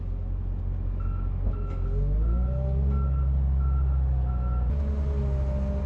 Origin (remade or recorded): recorded